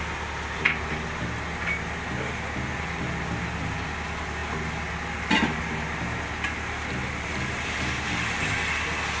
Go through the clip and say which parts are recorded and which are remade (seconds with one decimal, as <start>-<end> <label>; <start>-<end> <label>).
0.0-9.2 recorded